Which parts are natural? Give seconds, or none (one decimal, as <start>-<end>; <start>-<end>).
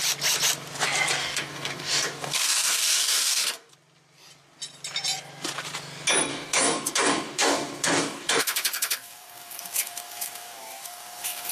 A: 0.0-1.2; 3.7-6.3